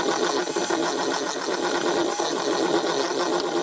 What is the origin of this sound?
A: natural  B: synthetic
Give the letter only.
A